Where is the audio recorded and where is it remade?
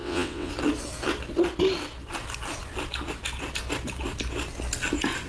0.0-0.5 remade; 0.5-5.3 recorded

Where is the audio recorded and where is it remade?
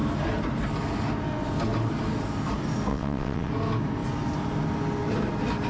0.0-2.9 recorded; 2.9-3.5 remade; 3.5-5.7 recorded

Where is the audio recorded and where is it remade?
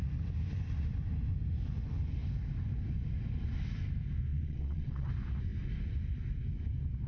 0.0-4.3 recorded; 4.3-5.1 remade; 5.1-7.1 recorded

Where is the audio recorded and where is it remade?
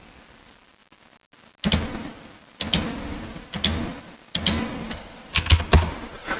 0.0-6.4 recorded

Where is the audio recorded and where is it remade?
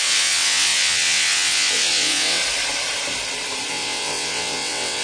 0.0-2.4 remade; 2.4-3.7 recorded; 3.7-5.0 remade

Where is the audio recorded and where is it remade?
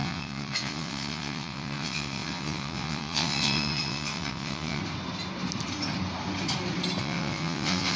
0.0-4.8 remade; 4.8-7.0 recorded; 7.0-8.0 remade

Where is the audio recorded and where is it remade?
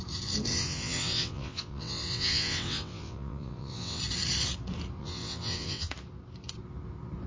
0.0-0.5 recorded; 0.5-4.0 remade; 4.0-5.0 recorded; 5.0-5.9 remade; 5.9-7.3 recorded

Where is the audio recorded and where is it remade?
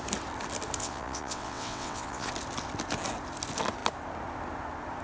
0.0-0.8 recorded; 0.8-2.3 remade; 2.3-5.0 recorded